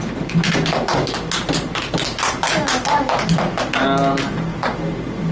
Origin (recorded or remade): recorded